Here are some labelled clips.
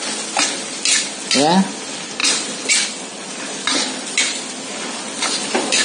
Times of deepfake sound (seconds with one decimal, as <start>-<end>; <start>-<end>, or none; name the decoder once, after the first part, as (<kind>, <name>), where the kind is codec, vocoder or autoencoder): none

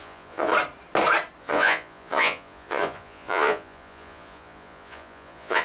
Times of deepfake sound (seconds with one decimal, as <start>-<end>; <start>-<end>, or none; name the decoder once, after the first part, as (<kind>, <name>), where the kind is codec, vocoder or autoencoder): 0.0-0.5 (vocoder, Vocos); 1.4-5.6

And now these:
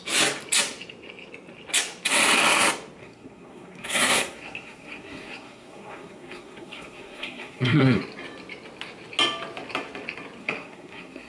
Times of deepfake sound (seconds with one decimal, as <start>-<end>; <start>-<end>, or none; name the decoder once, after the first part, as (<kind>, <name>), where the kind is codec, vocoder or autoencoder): 3.0-8.0 (codec, SNAC); 10.4-11.3

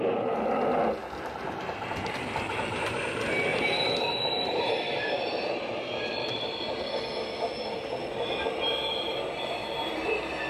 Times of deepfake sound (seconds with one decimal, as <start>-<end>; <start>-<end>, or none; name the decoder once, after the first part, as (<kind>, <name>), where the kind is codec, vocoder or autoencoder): 2.5-3.0 (vocoder, BigVGAN v2); 3.5-7.0; 8.0-8.6; 9.6-10.5